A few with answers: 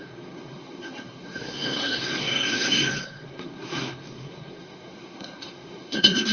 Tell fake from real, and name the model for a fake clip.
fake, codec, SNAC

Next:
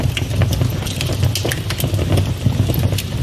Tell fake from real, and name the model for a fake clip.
real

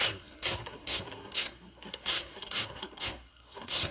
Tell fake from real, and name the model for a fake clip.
fake, codec, SNAC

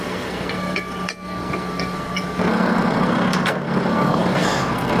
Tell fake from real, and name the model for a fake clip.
fake, codec, SNAC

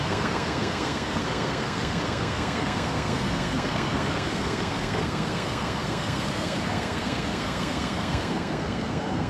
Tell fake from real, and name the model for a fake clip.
fake, codec, SNAC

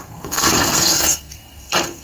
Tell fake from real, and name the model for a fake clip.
fake, codec, SNAC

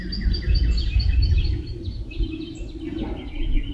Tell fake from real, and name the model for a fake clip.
real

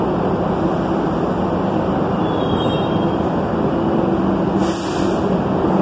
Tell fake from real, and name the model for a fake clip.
real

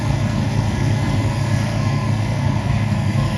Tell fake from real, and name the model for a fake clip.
fake, codec, SNAC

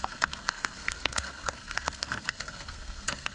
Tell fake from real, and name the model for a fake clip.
fake, codec, SNAC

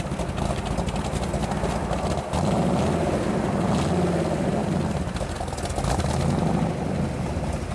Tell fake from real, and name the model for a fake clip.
real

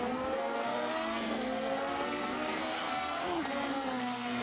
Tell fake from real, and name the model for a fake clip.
fake, codec, SNAC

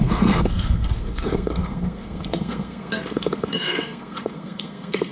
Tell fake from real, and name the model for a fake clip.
fake, codec, SNAC